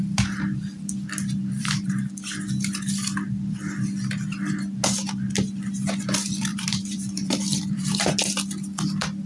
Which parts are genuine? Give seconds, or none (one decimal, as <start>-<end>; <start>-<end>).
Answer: 0.0-1.4; 2.1-6.5; 8.1-9.3